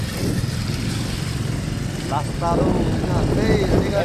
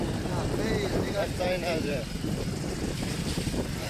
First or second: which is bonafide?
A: first